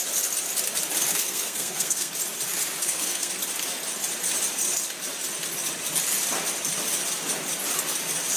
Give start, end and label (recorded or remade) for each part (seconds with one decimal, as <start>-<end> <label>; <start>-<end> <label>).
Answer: 0.0-1.1 recorded; 1.1-2.1 remade; 2.1-2.8 recorded; 2.8-3.3 remade; 3.3-8.4 recorded